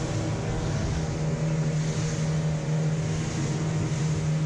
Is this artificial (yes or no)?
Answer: no